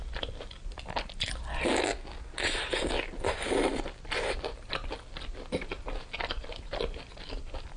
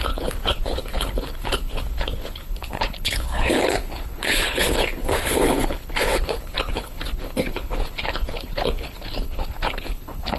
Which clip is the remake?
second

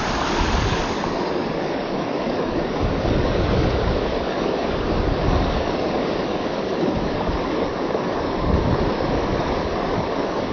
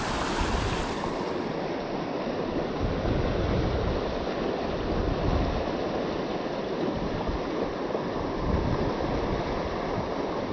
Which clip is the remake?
first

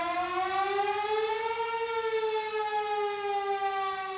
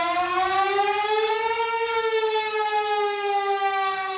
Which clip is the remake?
second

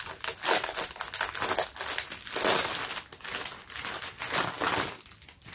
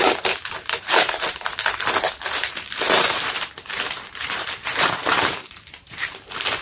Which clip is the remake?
second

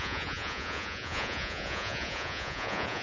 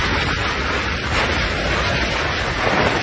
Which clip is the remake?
first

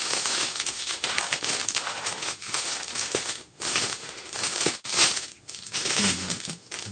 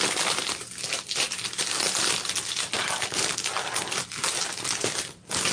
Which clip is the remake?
first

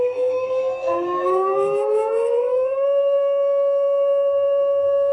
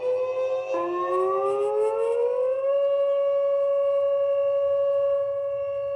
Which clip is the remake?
first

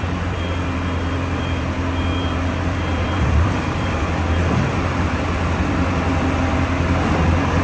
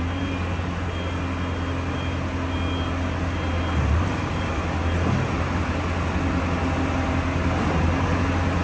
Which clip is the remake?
first